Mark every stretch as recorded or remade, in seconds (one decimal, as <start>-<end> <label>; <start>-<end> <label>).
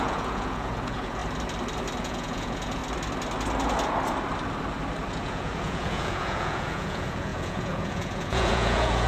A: 0.0-1.2 remade; 1.2-2.0 recorded; 2.0-2.8 remade; 2.8-5.1 recorded; 5.1-9.1 remade